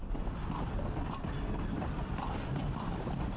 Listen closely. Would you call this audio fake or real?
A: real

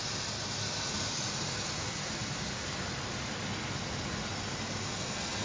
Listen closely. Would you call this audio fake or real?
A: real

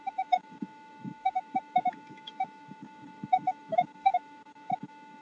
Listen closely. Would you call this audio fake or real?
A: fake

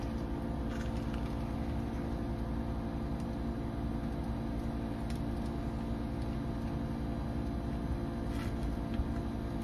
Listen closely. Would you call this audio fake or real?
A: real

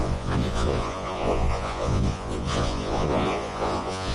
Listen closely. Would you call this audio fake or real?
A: fake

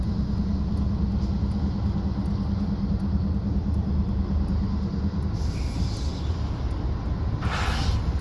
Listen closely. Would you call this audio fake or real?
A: real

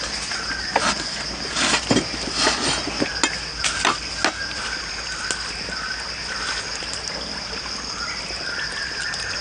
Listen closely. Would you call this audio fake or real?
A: real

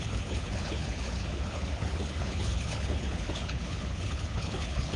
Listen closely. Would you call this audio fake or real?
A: fake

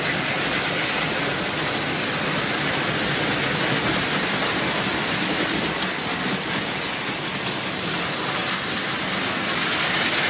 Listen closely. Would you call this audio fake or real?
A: real